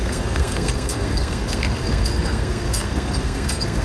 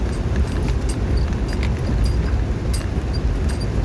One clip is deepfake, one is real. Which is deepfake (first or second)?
first